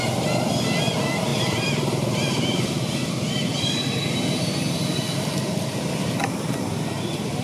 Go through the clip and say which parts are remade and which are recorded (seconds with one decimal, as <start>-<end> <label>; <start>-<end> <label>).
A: 0.0-1.3 recorded; 1.3-5.4 remade; 5.4-6.0 recorded; 6.0-6.5 remade; 6.5-7.4 recorded